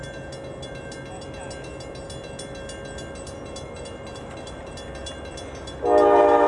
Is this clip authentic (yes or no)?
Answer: yes